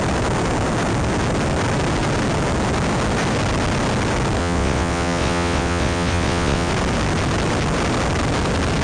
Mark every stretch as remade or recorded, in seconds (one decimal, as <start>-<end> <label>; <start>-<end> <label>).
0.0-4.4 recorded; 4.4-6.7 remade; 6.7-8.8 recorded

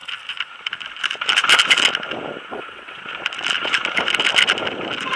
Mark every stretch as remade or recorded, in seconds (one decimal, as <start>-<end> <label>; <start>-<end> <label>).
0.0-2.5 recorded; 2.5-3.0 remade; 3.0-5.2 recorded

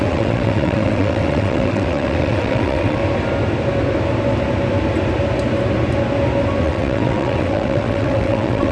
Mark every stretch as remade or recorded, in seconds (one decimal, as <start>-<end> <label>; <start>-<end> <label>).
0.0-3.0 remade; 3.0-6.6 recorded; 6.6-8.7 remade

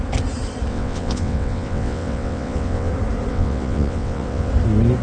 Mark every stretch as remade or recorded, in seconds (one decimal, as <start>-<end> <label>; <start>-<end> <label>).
0.0-0.7 recorded; 0.7-2.9 remade; 2.9-3.3 recorded; 3.3-4.5 remade; 4.5-5.0 recorded